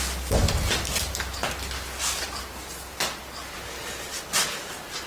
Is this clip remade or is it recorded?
recorded